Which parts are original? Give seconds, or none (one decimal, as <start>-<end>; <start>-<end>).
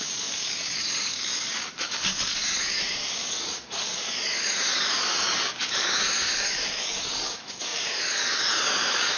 none